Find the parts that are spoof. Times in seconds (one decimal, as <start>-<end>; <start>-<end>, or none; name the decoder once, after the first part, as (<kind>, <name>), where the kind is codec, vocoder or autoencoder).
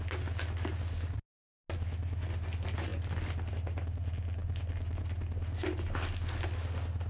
none